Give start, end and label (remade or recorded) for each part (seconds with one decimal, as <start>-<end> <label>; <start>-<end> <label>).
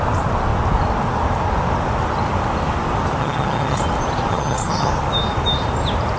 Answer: 0.0-3.2 recorded; 3.2-3.8 remade; 3.8-4.3 recorded; 4.3-4.9 remade; 4.9-6.2 recorded